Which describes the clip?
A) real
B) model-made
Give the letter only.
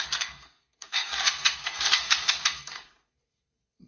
B